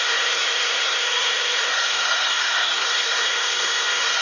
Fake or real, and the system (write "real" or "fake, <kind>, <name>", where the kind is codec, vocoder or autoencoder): fake, codec, SNAC